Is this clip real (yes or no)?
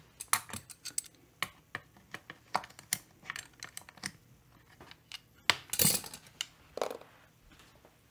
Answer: yes